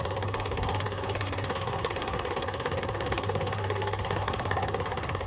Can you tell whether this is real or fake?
fake